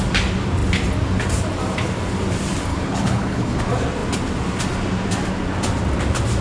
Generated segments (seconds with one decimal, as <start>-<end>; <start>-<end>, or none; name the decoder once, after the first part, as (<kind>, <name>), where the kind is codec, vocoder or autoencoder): 2.7-3.6 (codec, HILCodec)

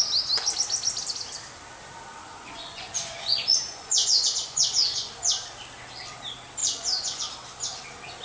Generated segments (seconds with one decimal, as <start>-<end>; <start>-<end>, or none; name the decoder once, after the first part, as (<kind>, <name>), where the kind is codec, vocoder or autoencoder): 2.2-5.1 (vocoder, Vocos); 6.6-7.3

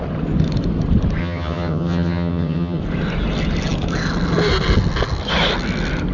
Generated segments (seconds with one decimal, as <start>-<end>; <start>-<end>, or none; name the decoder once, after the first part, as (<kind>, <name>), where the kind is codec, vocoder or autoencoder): 1.2-2.8 (vocoder, HiFi-GAN)

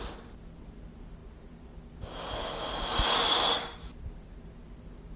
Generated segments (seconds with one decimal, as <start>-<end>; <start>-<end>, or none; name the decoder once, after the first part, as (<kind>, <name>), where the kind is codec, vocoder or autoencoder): none

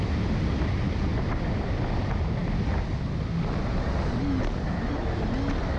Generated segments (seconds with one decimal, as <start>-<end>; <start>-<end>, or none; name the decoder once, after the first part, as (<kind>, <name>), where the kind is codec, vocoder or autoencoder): none

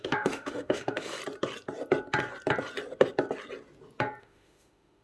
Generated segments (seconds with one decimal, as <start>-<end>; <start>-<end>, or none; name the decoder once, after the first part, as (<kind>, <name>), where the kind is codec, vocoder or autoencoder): 0.0-1.2 (autoencoder, DAC-VAE); 4.2-5.0

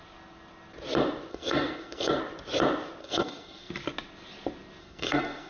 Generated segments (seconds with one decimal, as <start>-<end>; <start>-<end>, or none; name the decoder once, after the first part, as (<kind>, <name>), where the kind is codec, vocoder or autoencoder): 1.3-2.2 (codec, SNAC); 3.0-3.7; 4.8-5.5